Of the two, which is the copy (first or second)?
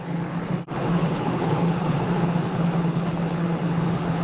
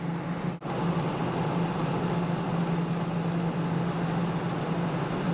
first